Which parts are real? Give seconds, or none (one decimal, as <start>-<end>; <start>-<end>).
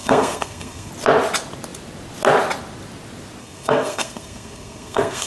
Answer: 0.9-3.4